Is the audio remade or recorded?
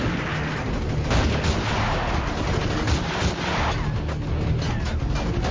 recorded